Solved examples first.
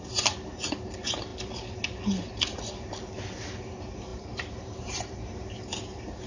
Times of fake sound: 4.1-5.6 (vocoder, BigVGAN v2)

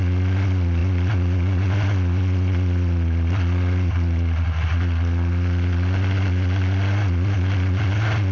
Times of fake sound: none

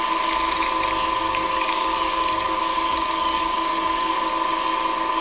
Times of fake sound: 1.2-4.3 (codec, DAC)

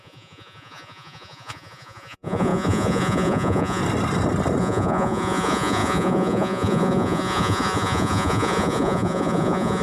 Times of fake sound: 0.0-3.8 (vocoder, Vocos); 4.6-9.8

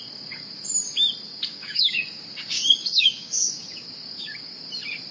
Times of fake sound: 1.5-4.6 (codec, DAC)